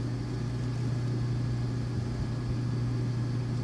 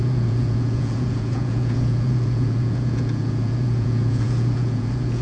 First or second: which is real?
first